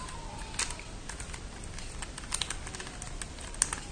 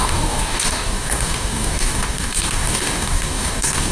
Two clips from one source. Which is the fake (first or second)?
second